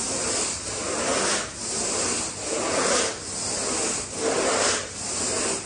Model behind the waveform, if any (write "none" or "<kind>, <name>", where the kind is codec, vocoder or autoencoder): none